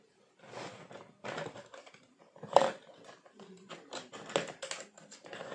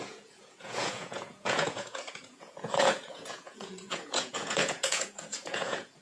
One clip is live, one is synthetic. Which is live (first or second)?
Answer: first